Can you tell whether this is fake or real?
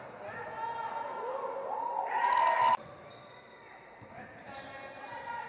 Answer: real